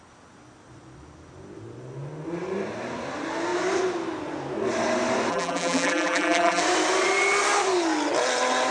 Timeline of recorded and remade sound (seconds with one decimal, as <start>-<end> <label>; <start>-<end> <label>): 0.0-5.3 recorded; 5.3-6.6 remade; 6.6-8.7 recorded